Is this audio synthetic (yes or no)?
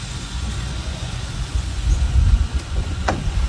yes